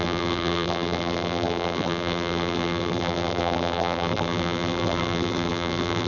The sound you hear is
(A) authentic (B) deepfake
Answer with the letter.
B